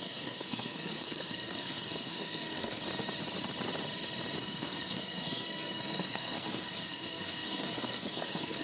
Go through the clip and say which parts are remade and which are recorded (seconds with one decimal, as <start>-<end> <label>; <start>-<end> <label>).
0.0-2.8 remade; 2.8-4.4 recorded; 4.4-8.6 remade